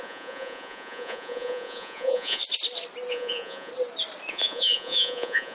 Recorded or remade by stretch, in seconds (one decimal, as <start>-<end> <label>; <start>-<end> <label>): 0.0-2.4 remade; 2.4-3.1 recorded; 3.1-3.7 remade; 3.7-4.3 recorded; 4.3-5.5 remade